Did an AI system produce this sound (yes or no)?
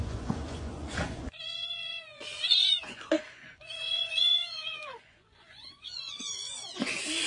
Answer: yes